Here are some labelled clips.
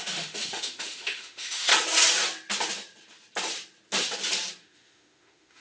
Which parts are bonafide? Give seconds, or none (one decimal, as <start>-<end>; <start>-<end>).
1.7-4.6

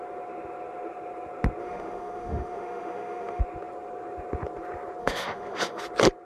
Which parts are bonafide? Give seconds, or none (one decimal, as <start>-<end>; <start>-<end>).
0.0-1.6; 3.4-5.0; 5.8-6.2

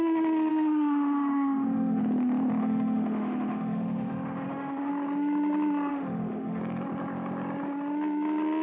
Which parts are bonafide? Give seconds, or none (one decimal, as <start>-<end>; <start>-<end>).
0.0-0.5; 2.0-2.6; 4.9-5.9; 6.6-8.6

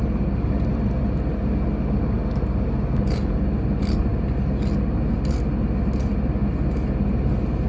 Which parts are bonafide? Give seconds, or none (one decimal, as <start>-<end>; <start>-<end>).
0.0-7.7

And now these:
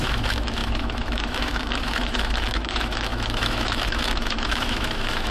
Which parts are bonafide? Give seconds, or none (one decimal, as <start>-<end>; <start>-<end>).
none